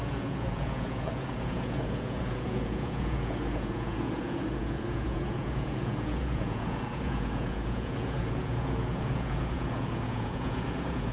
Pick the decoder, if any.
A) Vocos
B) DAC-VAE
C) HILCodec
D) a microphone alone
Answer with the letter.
A